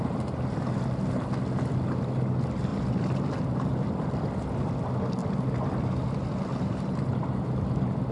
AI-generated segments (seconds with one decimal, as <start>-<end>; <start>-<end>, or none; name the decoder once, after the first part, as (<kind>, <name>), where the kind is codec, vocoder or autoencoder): 2.7-4.7 (vocoder, BigVGAN v2); 6.5-7.0